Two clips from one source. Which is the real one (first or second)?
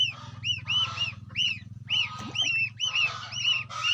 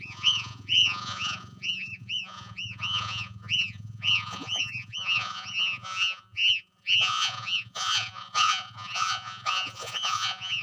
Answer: first